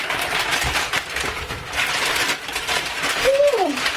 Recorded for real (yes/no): no